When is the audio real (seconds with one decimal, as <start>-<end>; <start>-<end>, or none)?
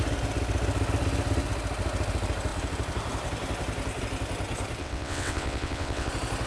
0.0-4.8; 6.1-6.5